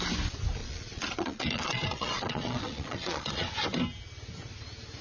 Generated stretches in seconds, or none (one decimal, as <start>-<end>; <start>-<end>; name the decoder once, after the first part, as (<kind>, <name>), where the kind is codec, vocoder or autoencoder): 0.6-3.5 (vocoder, Vocos)